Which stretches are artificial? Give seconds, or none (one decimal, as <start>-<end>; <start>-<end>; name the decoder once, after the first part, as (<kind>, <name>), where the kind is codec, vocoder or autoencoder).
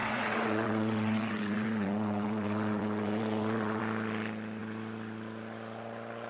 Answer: 0.0-3.8 (vocoder, WaveNeXt)